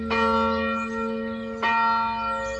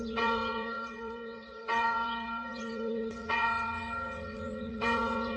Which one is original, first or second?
first